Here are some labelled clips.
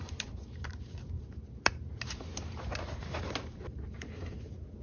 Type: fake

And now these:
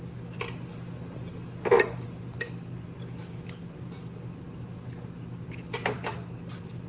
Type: real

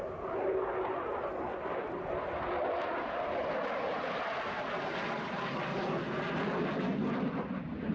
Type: real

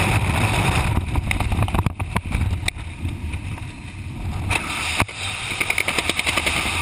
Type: real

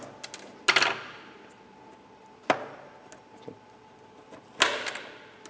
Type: real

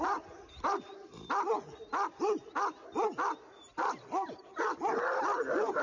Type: real